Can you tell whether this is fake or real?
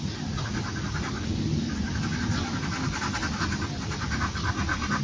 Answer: real